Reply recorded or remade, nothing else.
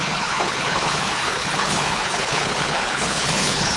remade